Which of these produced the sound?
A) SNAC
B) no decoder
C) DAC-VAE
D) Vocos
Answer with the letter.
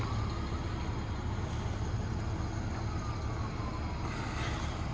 B